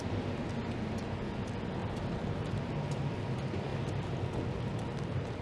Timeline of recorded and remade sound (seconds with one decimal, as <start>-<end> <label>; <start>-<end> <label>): 0.0-1.8 recorded; 1.8-3.0 remade; 3.0-3.7 recorded; 3.7-4.3 remade; 4.3-5.4 recorded